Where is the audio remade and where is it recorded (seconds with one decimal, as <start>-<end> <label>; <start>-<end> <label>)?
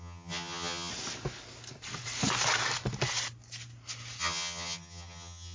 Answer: 0.0-0.9 remade; 0.9-4.2 recorded; 4.2-5.5 remade